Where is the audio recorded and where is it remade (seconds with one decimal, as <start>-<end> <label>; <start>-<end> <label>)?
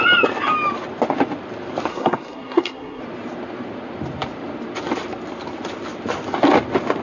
0.0-1.9 recorded; 1.9-3.0 remade; 3.0-7.0 recorded